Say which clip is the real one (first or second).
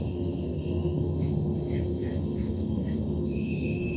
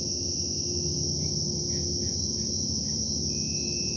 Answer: second